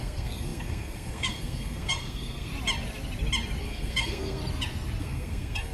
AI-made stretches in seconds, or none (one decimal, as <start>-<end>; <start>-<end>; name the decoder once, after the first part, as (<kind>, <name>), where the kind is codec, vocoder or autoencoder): 0.0-2.5 (codec, SNAC); 3.6-4.4; 5.0-5.7